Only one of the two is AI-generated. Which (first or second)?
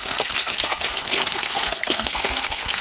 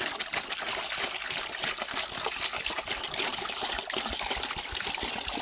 first